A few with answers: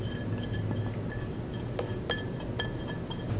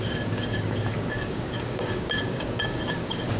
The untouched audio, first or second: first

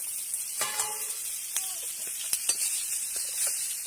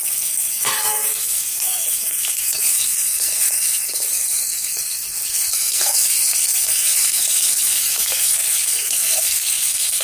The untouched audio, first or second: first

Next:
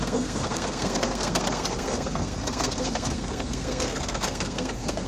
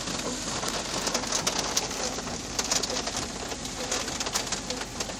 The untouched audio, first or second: second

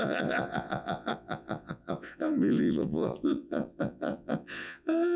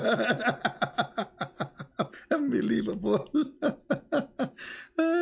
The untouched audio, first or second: second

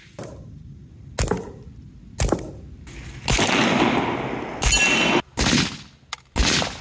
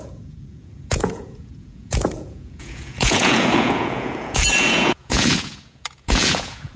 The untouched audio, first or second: first